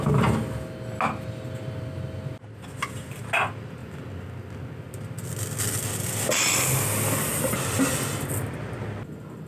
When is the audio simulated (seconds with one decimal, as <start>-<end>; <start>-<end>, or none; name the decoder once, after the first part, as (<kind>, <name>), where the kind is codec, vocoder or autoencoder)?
none